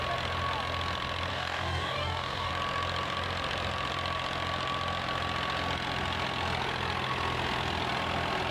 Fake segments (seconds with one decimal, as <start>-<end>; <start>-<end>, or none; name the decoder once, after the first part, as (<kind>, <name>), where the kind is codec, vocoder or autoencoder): 1.3-2.5 (codec, DAC)